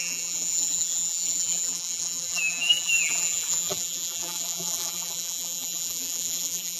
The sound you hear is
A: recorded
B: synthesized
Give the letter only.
B